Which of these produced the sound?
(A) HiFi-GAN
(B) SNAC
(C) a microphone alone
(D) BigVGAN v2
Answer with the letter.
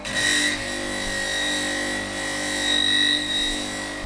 C